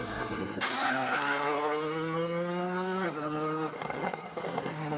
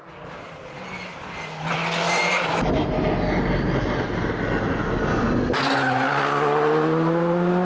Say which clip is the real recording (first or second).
second